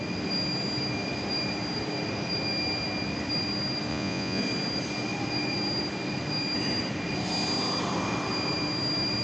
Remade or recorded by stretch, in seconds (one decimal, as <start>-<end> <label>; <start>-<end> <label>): 0.0-3.9 recorded; 3.9-4.4 remade; 4.4-9.2 recorded